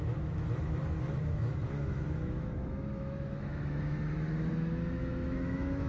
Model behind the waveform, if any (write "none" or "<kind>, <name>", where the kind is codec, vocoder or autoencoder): autoencoder, DAC-VAE